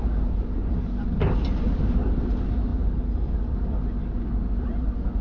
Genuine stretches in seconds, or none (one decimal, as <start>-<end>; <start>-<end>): 0.6-1.2; 2.7-4.3